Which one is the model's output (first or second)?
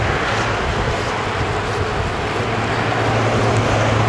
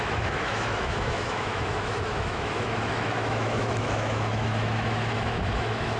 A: second